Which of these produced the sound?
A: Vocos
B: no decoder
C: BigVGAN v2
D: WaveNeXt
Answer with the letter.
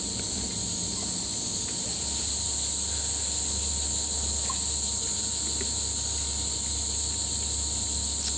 B